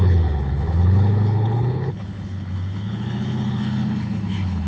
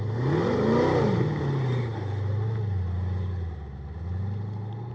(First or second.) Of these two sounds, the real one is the second